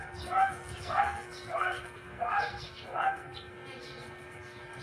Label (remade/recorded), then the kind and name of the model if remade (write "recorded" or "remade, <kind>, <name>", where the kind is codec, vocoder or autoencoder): remade, codec, SNAC